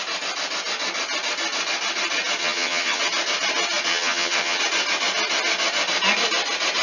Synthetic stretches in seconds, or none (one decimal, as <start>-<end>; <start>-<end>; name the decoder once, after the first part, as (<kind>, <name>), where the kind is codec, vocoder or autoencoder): 2.4-3.0 (vocoder, HiFi-GAN); 3.9-4.6